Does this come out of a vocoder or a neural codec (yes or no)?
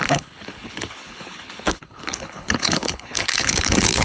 yes